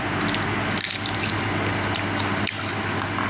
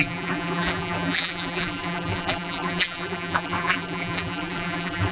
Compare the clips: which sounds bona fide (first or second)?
first